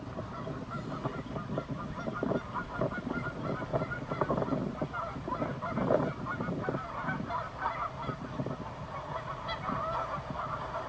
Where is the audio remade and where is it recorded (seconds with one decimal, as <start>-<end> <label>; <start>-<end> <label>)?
0.0-10.9 recorded